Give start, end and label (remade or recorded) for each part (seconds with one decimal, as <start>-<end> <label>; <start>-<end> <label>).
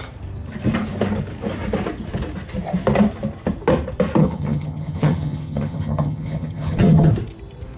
0.0-4.2 recorded; 4.2-7.1 remade; 7.1-7.8 recorded